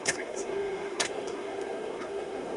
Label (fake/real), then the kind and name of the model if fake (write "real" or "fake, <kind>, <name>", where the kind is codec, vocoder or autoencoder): fake, codec, SNAC